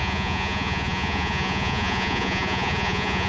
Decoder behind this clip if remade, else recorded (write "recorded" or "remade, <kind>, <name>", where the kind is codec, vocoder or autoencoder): remade, vocoder, Vocos